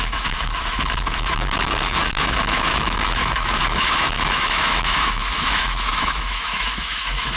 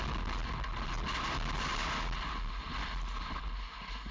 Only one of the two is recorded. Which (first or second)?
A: second